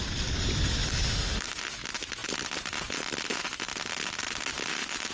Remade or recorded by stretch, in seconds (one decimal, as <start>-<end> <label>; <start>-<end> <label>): 0.0-0.9 recorded; 0.9-1.7 remade; 1.7-5.1 recorded